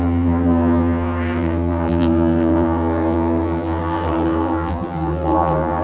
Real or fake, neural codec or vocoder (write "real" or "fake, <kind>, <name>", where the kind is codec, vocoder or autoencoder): fake, vocoder, BigVGAN v2